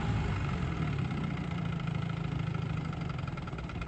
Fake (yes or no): no